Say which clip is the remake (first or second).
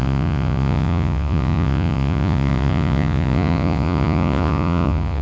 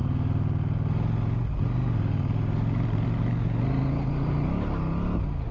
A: first